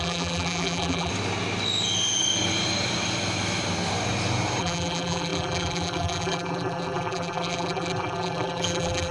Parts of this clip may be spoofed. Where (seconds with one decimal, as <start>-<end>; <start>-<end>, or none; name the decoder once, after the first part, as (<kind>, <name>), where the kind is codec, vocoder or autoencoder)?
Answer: 0.0-1.1 (vocoder, BigVGAN v2); 4.6-9.1